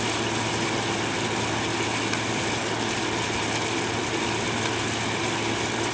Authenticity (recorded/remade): recorded